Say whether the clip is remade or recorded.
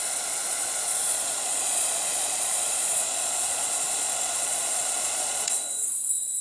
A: remade